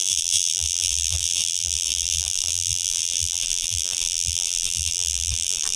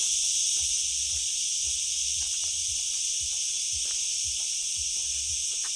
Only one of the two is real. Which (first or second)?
second